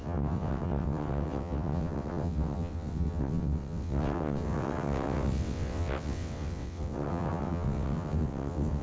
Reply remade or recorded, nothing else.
remade